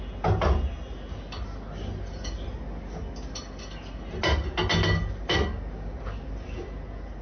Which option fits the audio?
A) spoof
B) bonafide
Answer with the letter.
B